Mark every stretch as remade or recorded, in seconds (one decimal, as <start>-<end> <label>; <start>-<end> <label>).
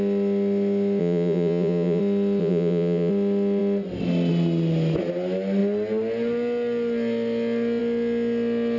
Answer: 0.0-1.0 recorded; 1.0-2.0 remade; 2.0-2.4 recorded; 2.4-3.1 remade; 3.1-8.8 recorded